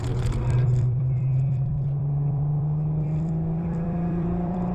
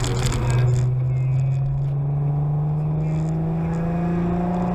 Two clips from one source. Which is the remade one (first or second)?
first